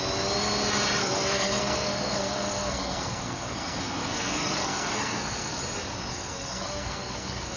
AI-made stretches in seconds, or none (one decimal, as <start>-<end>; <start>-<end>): 1.0-5.6; 6.1-7.6